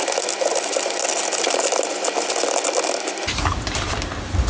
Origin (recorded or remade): recorded